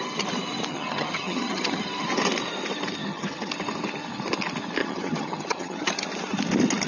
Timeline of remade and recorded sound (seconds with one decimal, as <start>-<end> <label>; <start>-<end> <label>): 0.0-0.7 recorded; 0.7-1.8 remade; 1.8-3.0 recorded; 3.0-3.5 remade; 3.5-4.8 recorded; 4.8-5.9 remade; 5.9-6.9 recorded